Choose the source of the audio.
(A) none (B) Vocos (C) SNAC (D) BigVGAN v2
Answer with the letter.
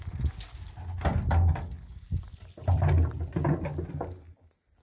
A